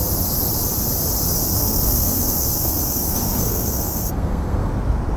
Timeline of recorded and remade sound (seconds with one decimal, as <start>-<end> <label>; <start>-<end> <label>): 0.0-1.6 recorded; 1.6-4.7 remade; 4.7-5.2 recorded